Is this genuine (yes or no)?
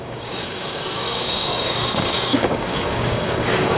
no